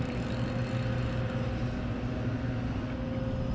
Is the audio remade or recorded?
recorded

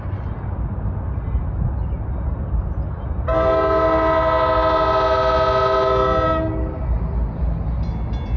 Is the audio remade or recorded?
recorded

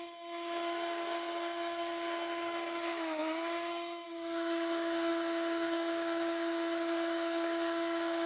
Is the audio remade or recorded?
remade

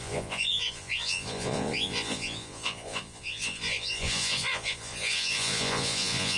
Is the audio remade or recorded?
remade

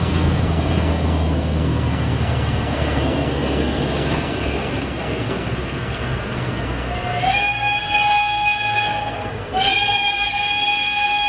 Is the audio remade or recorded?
remade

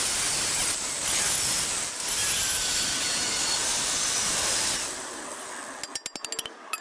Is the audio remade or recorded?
recorded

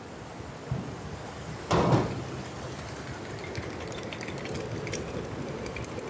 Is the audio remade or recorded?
recorded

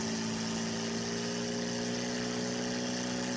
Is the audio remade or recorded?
recorded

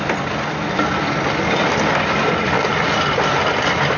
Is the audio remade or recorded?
recorded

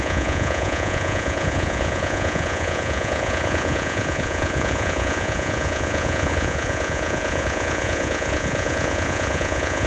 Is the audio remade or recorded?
remade